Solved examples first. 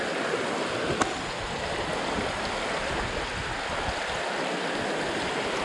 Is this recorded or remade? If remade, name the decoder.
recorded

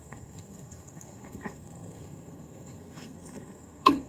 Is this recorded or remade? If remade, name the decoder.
remade, codec, SNAC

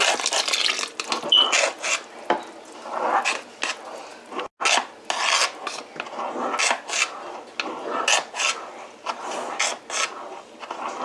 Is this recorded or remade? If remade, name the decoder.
recorded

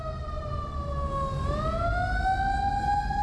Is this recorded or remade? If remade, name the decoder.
recorded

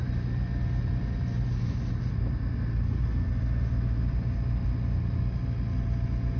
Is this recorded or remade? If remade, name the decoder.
recorded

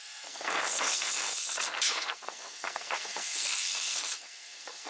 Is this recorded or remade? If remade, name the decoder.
remade, codec, SNAC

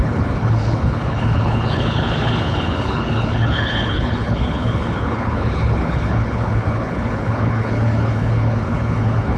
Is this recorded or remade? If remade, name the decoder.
remade, codec, HILCodec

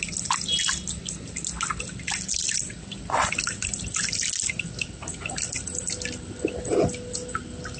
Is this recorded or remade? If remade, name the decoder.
recorded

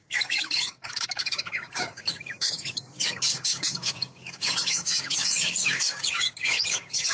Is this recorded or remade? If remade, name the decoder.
remade, codec, DAC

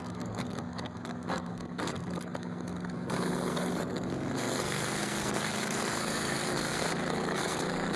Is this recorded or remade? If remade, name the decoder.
remade, codec, SNAC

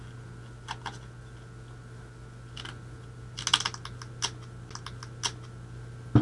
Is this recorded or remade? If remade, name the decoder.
recorded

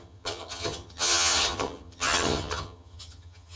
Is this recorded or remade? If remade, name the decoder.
remade, vocoder, HiFi-GAN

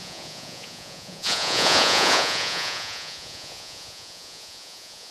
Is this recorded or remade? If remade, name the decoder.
remade, vocoder, Vocos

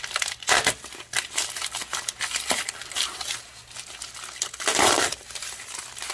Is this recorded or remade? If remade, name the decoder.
recorded